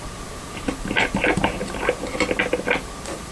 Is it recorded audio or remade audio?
recorded